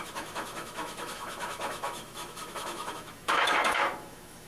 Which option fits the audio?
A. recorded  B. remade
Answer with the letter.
B